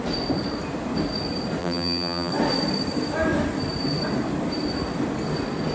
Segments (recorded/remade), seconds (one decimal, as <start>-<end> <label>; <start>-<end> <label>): 0.0-1.6 recorded; 1.6-2.3 remade; 2.3-5.7 recorded

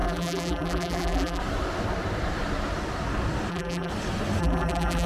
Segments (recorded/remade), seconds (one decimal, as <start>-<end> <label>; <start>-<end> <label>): 0.0-1.4 remade; 1.4-3.5 recorded; 3.5-3.9 remade; 3.9-4.4 recorded; 4.4-5.1 remade

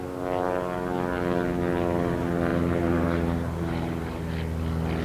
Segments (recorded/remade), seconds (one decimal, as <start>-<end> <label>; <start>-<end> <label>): 0.0-2.5 recorded; 2.5-4.2 remade; 4.2-5.0 recorded

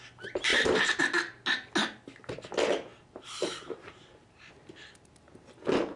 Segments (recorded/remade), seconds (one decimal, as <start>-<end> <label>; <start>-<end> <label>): 0.0-0.5 recorded; 0.5-1.0 remade; 1.0-2.9 recorded; 2.9-4.5 remade; 4.5-6.0 recorded

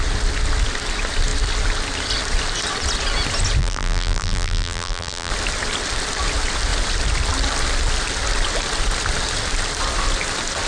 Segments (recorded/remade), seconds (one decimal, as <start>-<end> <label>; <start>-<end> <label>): 0.0-3.6 recorded; 3.6-5.3 remade; 5.3-10.7 recorded

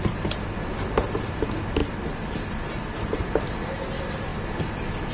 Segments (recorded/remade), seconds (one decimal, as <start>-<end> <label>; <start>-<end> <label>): 0.0-4.3 remade; 4.3-5.1 recorded

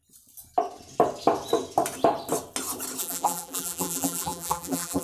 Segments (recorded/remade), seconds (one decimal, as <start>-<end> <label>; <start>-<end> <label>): 0.0-3.0 recorded; 3.0-5.0 remade